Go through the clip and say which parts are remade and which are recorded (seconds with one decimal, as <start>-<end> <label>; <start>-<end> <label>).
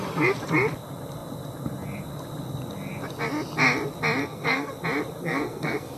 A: 0.0-4.2 recorded; 4.2-4.7 remade; 4.7-5.2 recorded; 5.2-6.0 remade